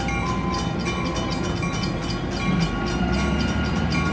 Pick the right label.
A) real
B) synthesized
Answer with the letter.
A